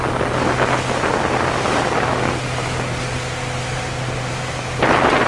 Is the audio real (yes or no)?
yes